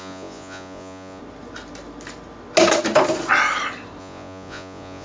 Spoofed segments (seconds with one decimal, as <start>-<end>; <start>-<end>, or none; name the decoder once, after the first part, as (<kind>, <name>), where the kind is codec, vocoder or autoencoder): 0.0-1.2 (vocoder, Vocos); 4.0-5.0